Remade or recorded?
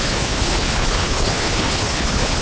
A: remade